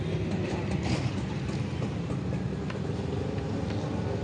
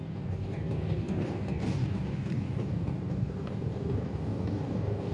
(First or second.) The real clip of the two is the first